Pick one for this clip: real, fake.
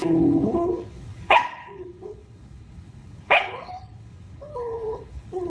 fake